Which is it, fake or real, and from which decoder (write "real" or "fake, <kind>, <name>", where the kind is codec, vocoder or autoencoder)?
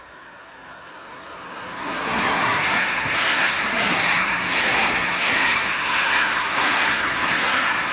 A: fake, codec, SNAC